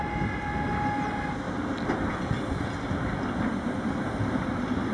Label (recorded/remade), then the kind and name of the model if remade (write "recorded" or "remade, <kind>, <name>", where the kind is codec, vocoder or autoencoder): recorded